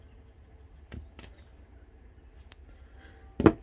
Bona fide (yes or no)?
yes